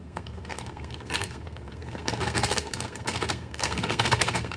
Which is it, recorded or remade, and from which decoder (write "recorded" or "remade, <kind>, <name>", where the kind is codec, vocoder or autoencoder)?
remade, codec, SNAC